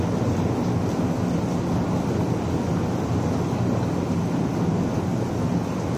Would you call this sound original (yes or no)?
yes